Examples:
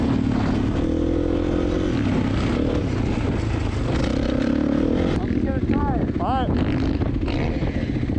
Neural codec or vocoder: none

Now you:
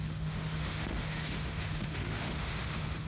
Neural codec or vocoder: autoencoder, DAC-VAE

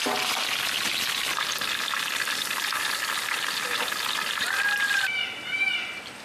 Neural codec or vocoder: none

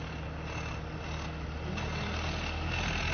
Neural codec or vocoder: none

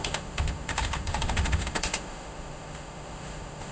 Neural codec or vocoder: autoencoder, DAC-VAE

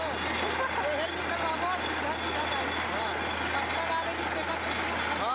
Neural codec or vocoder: none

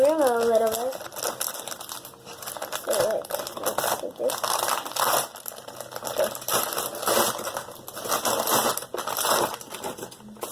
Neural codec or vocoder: none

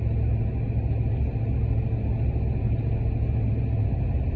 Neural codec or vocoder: none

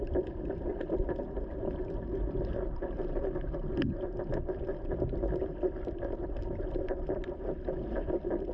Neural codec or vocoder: none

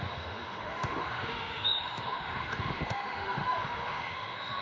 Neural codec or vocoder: autoencoder, DAC-VAE